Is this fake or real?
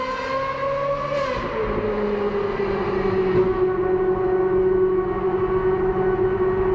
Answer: real